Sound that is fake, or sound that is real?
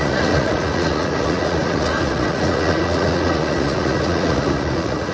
fake